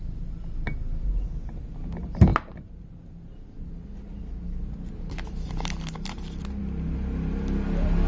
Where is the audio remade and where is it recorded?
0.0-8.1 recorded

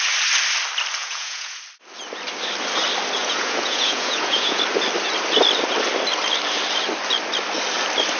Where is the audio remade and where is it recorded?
0.0-1.0 recorded; 1.0-1.6 remade; 1.6-3.2 recorded; 3.2-4.6 remade; 4.6-8.2 recorded

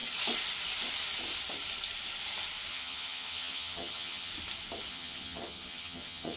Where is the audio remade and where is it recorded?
0.0-2.7 recorded; 2.7-4.3 remade; 4.3-4.9 recorded; 4.9-6.4 remade

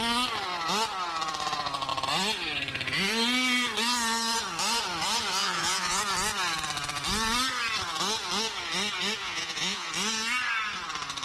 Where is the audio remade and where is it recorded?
0.0-5.4 recorded; 5.4-6.0 remade; 6.0-9.2 recorded; 9.2-9.9 remade; 9.9-11.2 recorded